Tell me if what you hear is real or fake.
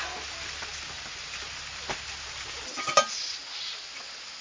real